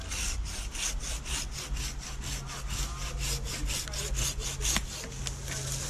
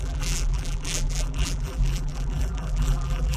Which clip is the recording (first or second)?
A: first